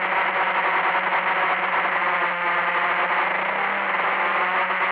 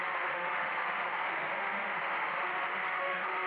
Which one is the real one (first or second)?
first